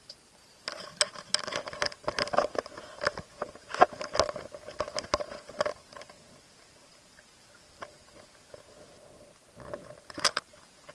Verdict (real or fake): real